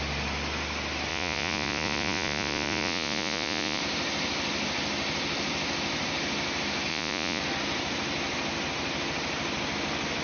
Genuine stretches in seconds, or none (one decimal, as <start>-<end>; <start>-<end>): 0.0-1.1; 3.8-6.9; 7.4-10.2

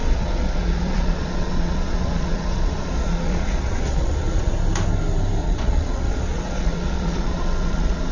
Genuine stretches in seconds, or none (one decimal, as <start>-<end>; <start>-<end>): 4.5-5.4

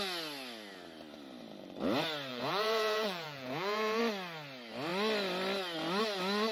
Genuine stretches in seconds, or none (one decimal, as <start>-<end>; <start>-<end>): 0.0-2.3; 4.0-6.5

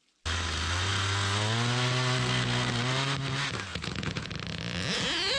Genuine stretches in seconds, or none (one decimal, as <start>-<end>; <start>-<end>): 0.0-3.7; 4.3-5.4